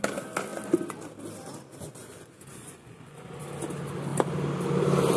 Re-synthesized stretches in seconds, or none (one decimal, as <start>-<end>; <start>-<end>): 1.7-3.4